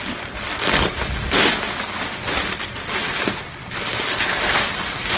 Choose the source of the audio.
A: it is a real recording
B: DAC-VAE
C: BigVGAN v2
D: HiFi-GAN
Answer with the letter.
A